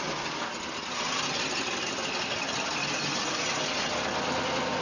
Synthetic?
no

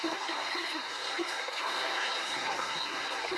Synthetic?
yes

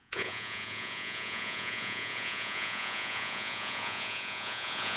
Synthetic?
yes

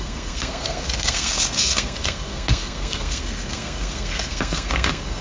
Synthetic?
yes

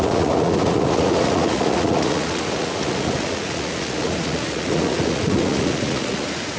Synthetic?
yes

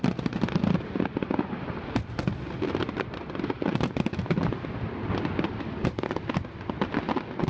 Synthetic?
no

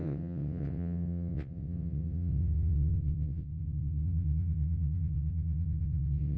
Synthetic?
yes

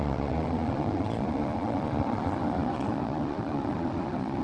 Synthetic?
yes